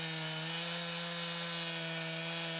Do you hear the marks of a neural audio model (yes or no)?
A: no